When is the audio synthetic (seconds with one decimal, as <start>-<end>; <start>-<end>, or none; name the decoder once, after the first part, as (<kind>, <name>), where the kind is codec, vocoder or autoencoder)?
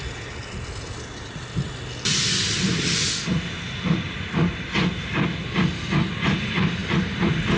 none